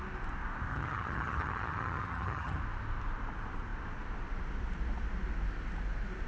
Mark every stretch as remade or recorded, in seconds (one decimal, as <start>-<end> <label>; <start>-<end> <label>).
0.0-0.7 recorded; 0.7-2.6 remade; 2.6-6.3 recorded